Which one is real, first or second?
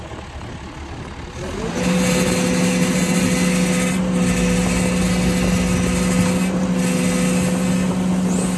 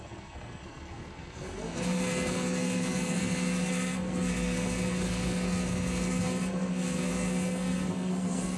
first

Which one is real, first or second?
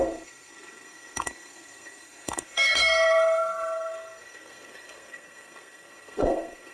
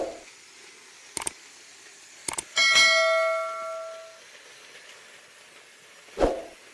second